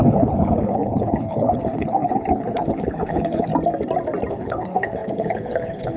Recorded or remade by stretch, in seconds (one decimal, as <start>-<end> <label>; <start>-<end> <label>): 0.0-3.5 remade; 3.5-4.3 recorded; 4.3-6.0 remade